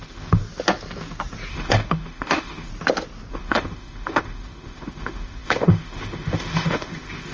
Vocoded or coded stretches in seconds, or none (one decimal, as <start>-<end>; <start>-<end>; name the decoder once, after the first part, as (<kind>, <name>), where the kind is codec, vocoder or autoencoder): 0.0-0.4 (autoencoder, DAC-VAE); 1.5-2.7; 3.3-7.3